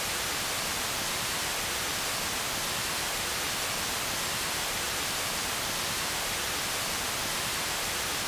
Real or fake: real